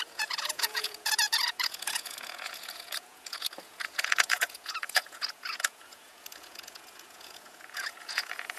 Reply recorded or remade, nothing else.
remade